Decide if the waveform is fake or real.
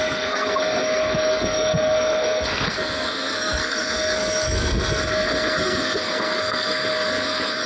fake